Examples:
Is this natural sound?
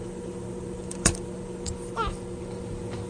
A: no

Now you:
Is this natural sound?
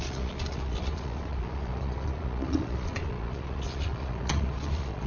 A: no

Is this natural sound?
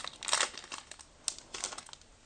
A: yes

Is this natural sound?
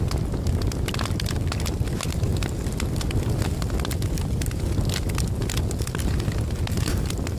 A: yes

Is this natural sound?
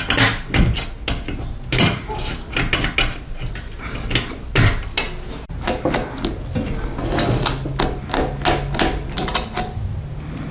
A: yes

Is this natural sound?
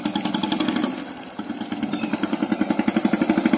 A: yes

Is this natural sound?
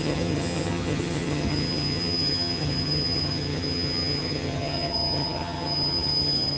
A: no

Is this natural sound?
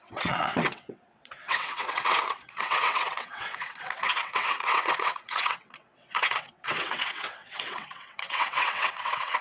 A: no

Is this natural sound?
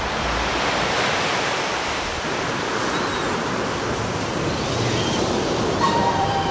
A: no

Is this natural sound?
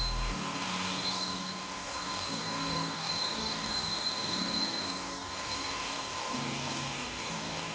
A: no